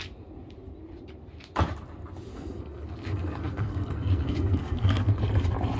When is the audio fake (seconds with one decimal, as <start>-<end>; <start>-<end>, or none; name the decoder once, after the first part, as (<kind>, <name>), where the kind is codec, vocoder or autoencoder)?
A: 2.3-5.2 (codec, SNAC)